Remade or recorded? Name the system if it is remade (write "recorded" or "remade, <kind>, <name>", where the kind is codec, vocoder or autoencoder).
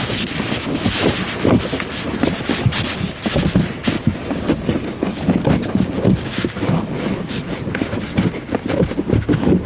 recorded